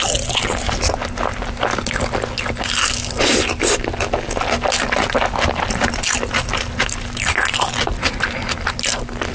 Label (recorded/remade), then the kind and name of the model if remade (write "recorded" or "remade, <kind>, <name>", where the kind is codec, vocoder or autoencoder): recorded